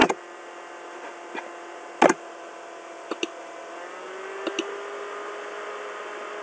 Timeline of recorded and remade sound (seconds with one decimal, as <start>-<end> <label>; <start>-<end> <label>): 0.0-6.4 recorded